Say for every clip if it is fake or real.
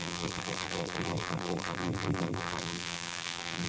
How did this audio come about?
fake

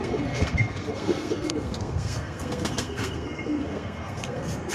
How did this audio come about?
fake